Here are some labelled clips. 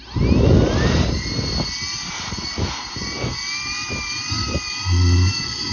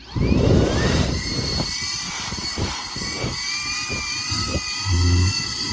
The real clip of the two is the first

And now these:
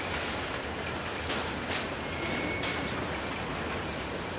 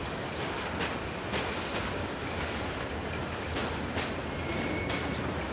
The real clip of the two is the first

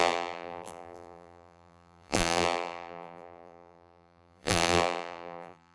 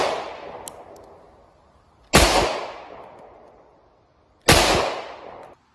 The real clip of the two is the second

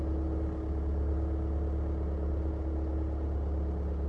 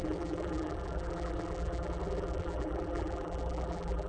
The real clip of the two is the first